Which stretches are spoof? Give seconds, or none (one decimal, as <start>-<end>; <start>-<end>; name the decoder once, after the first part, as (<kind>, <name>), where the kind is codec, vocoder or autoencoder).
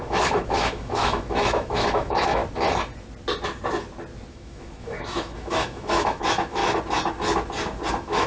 0.0-2.4 (autoencoder, DAC-VAE); 4.3-6.6; 7.9-8.3